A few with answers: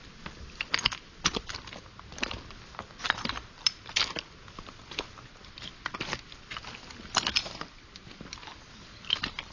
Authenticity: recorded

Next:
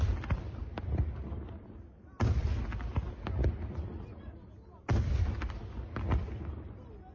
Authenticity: recorded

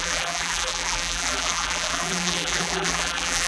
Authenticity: remade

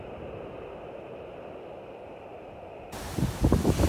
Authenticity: remade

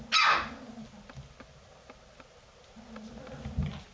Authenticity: recorded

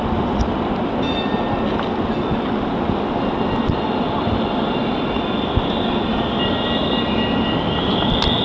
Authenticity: recorded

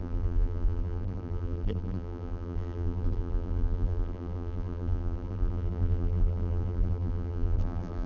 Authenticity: remade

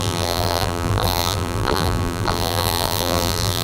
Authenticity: remade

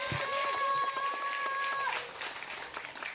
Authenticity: recorded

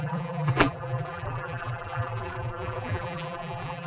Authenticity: remade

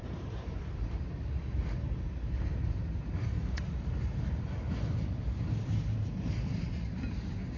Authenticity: remade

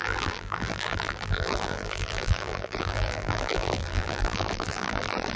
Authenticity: remade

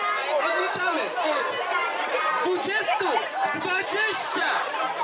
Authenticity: recorded